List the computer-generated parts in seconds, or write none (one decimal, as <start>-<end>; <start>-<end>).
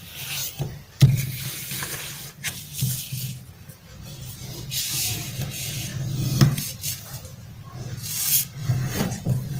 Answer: 0.4-2.1; 8.6-9.6